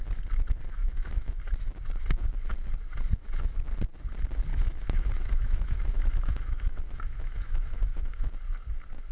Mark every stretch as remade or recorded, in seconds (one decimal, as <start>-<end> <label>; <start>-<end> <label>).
0.0-0.8 recorded; 0.8-1.4 remade; 1.4-4.5 recorded; 4.5-8.2 remade; 8.2-9.1 recorded